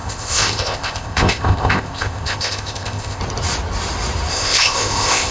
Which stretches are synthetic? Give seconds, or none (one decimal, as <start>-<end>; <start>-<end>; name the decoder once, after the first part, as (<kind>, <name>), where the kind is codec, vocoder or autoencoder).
0.0-3.2 (codec, ZipCodec); 4.3-5.3